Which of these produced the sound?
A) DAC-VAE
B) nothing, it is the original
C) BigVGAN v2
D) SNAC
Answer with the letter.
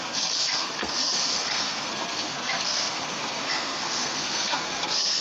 D